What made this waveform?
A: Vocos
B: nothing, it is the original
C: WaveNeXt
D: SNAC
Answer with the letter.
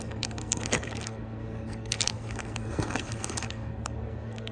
D